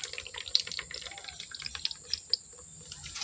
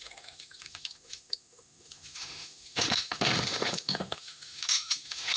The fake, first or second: second